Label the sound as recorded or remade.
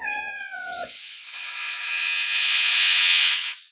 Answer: remade